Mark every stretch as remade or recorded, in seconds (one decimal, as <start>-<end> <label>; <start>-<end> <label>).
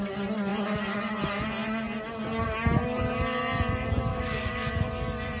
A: 0.0-4.1 recorded; 4.1-4.7 remade; 4.7-5.4 recorded